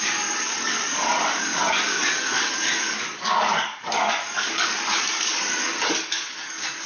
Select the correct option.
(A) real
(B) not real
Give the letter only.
B